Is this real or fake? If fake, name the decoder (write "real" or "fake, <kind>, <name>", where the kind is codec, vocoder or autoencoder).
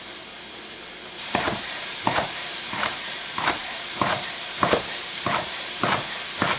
fake, vocoder, BigVGAN v2